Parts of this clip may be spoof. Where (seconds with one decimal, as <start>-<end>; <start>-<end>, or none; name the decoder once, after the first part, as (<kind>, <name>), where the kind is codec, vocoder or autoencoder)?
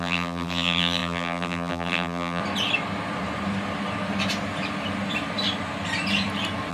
0.0-2.4 (vocoder, BigVGAN v2)